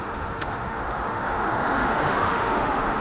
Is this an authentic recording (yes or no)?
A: no